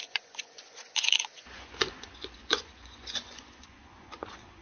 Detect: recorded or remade remade